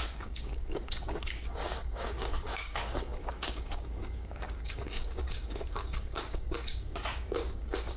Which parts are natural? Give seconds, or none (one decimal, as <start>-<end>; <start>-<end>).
none